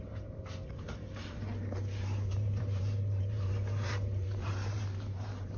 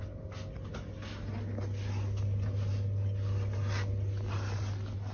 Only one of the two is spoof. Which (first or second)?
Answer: first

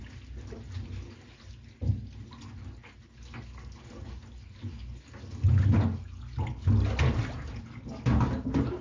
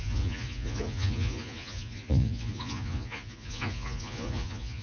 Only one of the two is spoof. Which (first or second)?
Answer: second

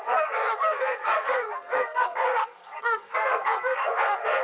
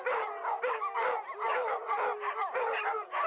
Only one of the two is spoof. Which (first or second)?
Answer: first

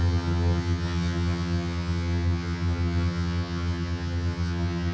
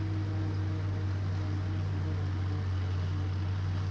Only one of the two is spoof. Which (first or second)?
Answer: first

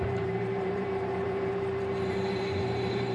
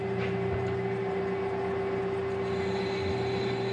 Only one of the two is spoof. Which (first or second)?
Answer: first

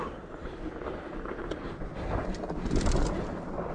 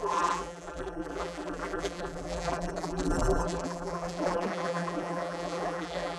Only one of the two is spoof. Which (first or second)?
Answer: second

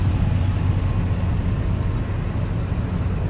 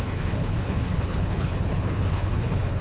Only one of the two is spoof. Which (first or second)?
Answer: second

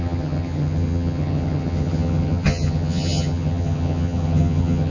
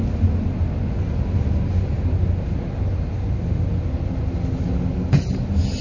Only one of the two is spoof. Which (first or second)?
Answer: first